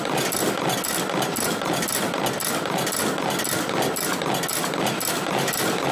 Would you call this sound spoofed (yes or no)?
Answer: no